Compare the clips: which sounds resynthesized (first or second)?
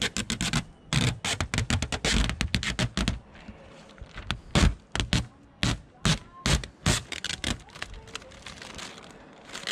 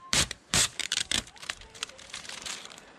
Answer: second